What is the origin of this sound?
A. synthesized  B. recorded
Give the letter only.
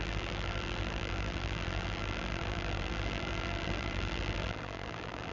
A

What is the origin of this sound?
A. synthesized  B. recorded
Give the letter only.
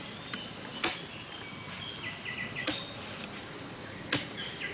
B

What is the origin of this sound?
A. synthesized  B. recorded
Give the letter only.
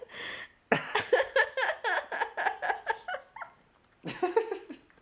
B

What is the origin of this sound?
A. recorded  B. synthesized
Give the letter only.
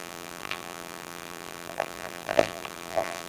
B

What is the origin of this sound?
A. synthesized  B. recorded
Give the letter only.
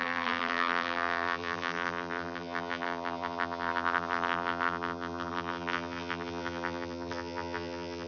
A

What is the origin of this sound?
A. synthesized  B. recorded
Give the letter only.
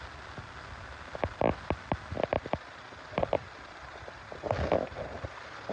A